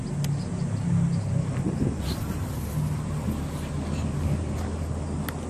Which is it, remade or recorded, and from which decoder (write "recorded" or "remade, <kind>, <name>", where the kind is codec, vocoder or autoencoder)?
recorded